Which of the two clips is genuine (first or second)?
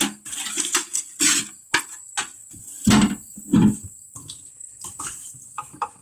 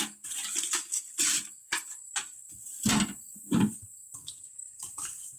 first